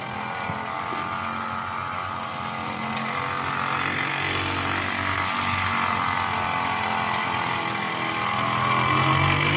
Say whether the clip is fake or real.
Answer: real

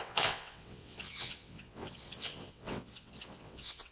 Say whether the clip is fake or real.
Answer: fake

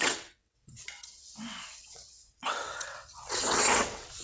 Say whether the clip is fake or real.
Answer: fake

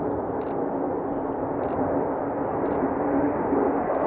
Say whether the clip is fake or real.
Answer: real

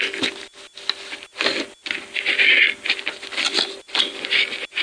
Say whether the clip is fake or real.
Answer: real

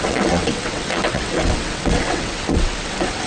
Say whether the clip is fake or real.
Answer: fake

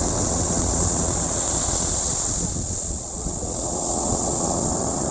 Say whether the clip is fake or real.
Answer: fake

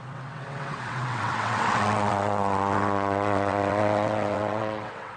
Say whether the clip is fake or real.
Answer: fake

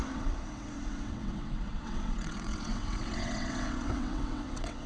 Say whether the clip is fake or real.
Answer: fake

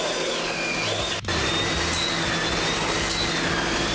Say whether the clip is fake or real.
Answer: real